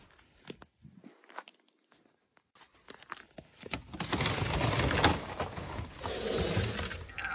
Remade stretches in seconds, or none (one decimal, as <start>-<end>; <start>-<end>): 5.1-5.9